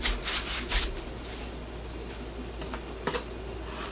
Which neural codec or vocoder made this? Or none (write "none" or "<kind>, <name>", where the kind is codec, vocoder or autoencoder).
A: none